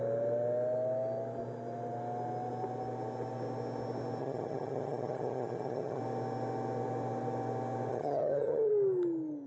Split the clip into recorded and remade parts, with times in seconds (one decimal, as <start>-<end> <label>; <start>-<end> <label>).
0.0-4.2 recorded; 4.2-6.0 remade; 6.0-7.9 recorded; 7.9-8.7 remade; 8.7-9.5 recorded